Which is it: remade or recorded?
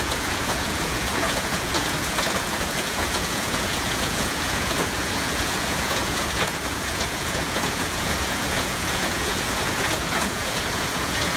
remade